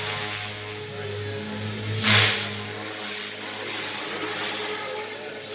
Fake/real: real